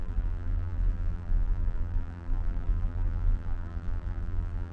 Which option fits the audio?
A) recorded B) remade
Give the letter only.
B